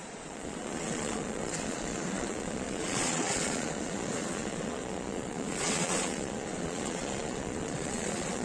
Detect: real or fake fake